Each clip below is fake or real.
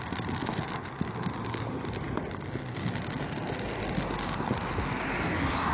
real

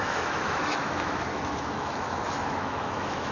fake